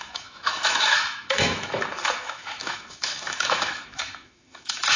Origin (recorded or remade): remade